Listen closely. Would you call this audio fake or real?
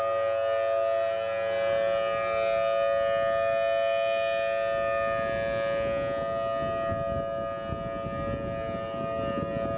real